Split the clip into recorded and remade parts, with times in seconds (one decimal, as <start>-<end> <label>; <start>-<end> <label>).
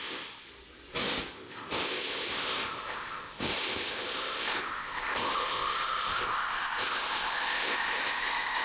0.0-0.5 remade; 0.5-1.3 recorded; 1.3-8.6 remade